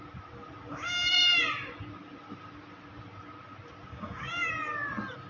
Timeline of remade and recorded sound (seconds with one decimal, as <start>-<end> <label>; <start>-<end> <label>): 0.0-0.7 recorded; 0.7-1.4 remade; 1.4-3.9 recorded; 3.9-4.5 remade; 4.5-5.3 recorded

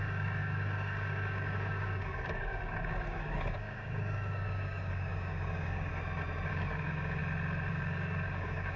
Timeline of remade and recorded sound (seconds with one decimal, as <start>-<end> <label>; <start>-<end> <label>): 0.0-5.9 remade; 5.9-6.5 recorded; 6.5-7.2 remade; 7.2-7.7 recorded; 7.7-8.8 remade

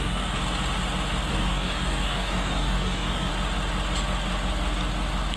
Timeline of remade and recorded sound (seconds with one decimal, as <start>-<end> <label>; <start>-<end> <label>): 0.0-0.4 remade; 0.4-1.3 recorded; 1.3-3.3 remade; 3.3-5.4 recorded

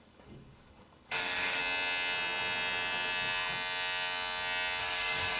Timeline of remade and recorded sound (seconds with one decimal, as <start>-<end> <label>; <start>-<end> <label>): 0.0-1.6 remade; 1.6-4.8 recorded; 4.8-5.4 remade

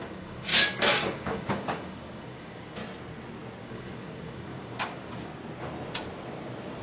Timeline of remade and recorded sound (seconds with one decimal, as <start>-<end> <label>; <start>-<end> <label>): 0.0-2.8 remade; 2.8-3.6 recorded; 3.6-5.3 remade; 5.3-6.8 recorded